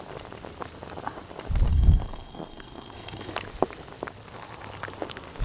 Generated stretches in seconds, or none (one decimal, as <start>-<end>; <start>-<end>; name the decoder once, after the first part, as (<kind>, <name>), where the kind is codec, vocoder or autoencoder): 1.7-3.3 (codec, SNAC)